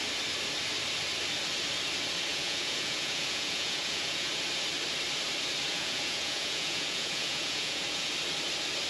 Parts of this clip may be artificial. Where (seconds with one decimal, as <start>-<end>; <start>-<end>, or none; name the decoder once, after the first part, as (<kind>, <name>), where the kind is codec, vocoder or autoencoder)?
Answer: 2.3-4.3 (vocoder, Vocos); 5.7-8.1